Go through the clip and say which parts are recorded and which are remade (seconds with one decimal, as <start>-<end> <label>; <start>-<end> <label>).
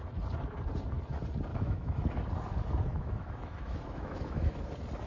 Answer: 0.0-1.5 recorded; 1.5-2.3 remade; 2.3-2.9 recorded; 2.9-4.6 remade; 4.6-5.1 recorded